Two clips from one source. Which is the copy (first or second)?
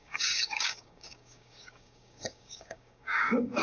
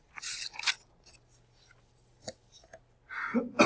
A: first